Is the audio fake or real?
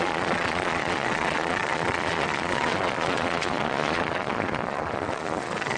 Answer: fake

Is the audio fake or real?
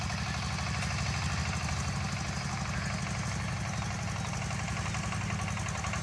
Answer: real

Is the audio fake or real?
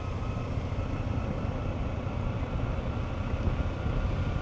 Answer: real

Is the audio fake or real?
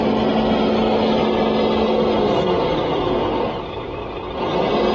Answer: real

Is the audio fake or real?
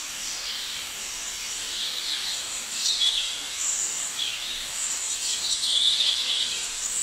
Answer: fake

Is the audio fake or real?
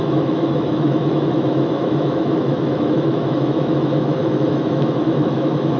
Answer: fake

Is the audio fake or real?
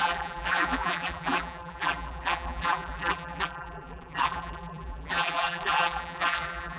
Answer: fake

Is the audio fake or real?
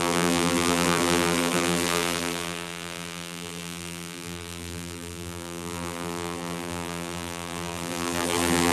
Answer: fake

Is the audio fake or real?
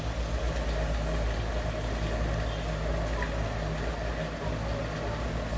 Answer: real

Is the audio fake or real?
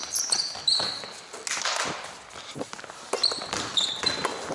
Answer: real